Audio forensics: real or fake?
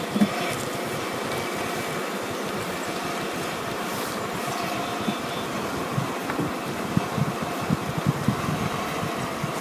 real